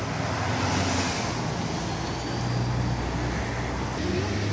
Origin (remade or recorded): recorded